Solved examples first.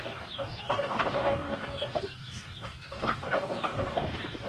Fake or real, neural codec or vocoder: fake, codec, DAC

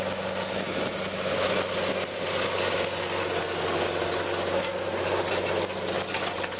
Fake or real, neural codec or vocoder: real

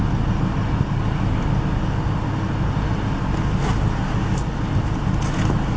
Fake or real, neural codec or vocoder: real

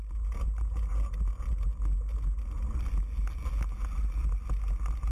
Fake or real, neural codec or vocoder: real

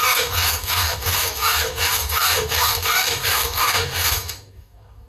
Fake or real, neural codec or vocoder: fake, codec, DAC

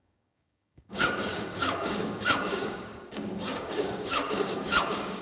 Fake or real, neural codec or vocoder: fake, codec, DAC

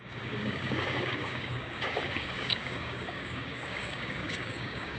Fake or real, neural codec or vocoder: fake, codec, DAC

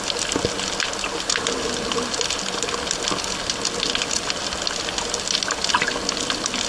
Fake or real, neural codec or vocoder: real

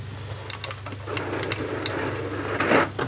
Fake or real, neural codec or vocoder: real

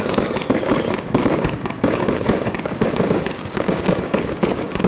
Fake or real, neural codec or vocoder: fake, codec, DAC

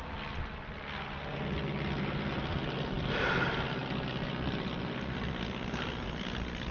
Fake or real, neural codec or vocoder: real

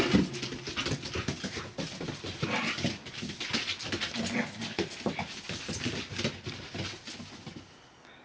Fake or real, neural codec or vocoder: real